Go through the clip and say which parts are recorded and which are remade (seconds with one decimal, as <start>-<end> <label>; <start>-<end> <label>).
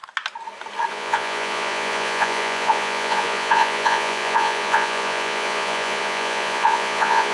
0.0-0.9 recorded; 0.9-7.3 remade